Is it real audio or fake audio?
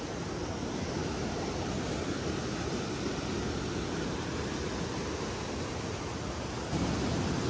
real